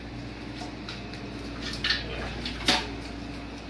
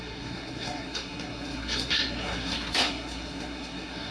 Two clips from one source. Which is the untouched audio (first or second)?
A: first